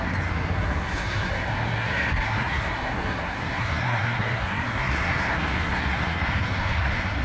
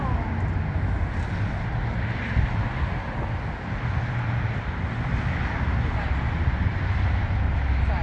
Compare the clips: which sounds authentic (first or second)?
second